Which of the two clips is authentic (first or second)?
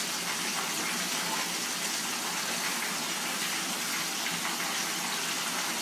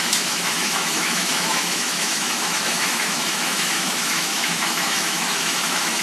first